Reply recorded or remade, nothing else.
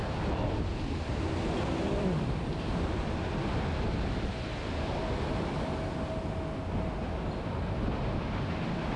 recorded